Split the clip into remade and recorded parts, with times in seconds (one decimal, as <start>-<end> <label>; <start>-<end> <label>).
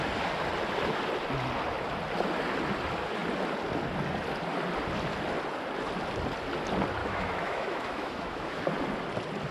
0.0-7.0 recorded; 7.0-8.6 remade; 8.6-9.5 recorded